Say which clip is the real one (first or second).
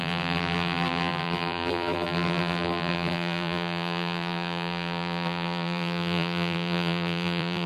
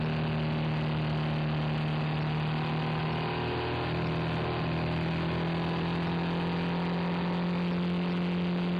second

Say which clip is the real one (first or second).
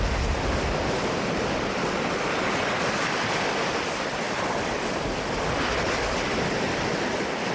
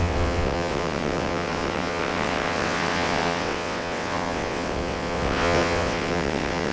first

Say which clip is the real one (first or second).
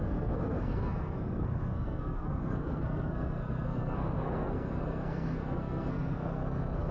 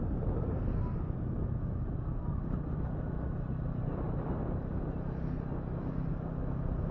second